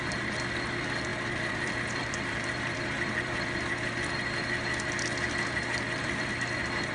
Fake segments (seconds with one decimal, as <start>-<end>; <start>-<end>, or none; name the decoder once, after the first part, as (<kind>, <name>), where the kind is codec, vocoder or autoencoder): 1.1-3.9 (vocoder, BigVGAN v2)